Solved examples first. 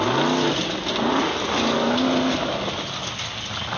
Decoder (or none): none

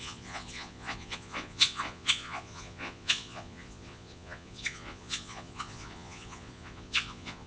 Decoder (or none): vocoder, Vocos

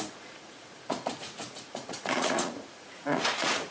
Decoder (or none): vocoder, Vocos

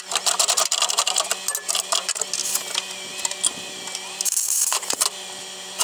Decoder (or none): none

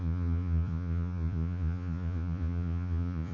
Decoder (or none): vocoder, Vocos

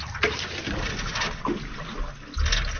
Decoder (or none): none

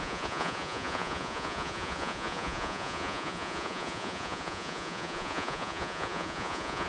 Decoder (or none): vocoder, Vocos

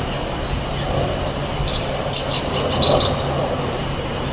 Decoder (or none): none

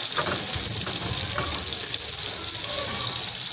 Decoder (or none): none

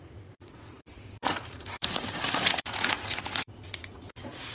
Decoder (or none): vocoder, Vocos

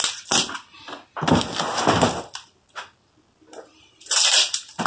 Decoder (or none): none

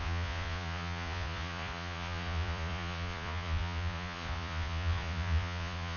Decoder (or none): vocoder, Vocos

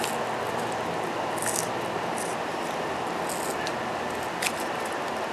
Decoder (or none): none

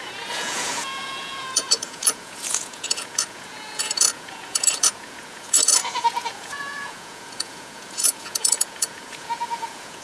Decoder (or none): vocoder, Vocos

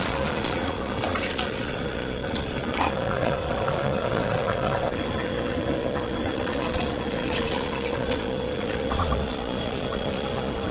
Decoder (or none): vocoder, Vocos